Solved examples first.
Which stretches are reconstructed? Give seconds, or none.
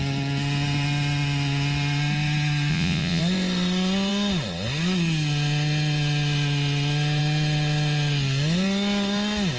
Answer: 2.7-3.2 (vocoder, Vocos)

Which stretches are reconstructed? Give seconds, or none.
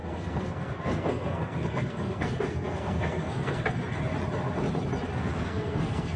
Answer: 0.0-3.7 (codec, SNAC); 5.1-6.2